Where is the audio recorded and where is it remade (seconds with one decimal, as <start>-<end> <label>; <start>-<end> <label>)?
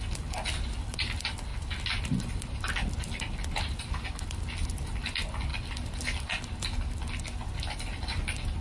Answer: 0.0-5.5 recorded; 5.5-6.4 remade; 6.4-8.6 recorded